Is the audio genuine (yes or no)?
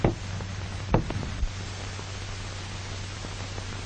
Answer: yes